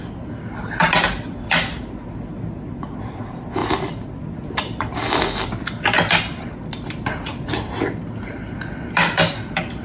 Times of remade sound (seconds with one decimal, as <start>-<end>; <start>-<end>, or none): none